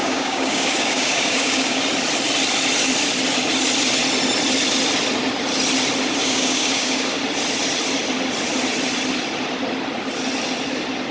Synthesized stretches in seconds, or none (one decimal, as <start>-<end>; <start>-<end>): 0.0-1.8; 6.2-7.2